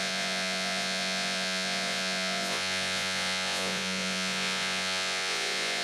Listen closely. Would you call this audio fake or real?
fake